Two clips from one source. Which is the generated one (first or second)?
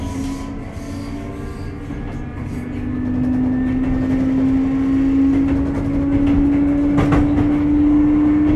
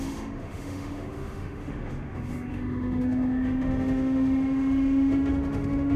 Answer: second